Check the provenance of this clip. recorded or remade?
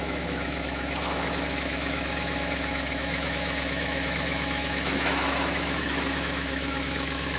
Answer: remade